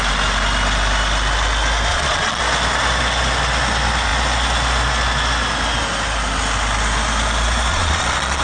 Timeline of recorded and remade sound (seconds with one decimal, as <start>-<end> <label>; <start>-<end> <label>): 0.0-1.9 recorded; 1.9-2.4 remade; 2.4-7.7 recorded; 7.7-8.4 remade